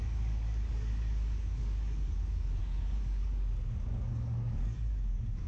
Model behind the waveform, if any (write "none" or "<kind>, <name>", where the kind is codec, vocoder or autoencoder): codec, DAC